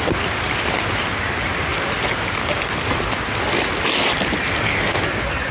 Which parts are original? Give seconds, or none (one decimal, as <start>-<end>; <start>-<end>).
0.0-5.5